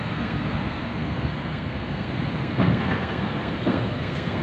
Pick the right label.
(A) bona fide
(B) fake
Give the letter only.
B